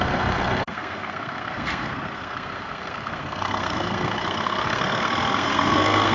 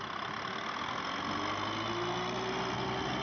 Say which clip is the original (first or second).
second